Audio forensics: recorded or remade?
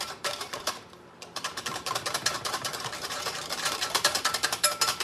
remade